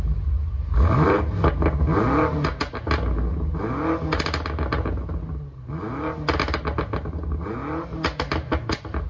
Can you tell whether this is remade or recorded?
recorded